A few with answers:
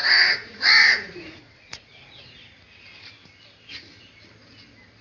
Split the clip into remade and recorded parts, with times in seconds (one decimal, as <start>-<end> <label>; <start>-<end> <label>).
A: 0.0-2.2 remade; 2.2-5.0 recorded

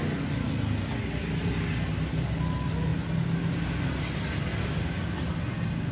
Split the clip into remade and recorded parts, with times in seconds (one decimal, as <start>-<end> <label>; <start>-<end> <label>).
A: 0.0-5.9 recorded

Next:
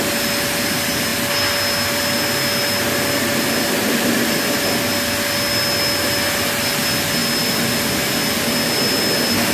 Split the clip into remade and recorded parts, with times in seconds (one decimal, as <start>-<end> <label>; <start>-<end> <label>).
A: 0.0-9.5 recorded

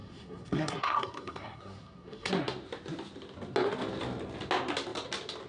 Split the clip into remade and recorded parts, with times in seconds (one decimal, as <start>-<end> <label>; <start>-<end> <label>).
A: 0.0-2.3 remade; 2.3-5.5 recorded